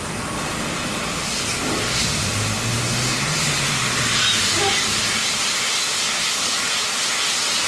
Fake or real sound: real